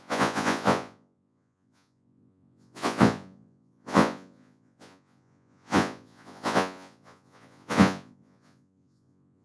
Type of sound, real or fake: fake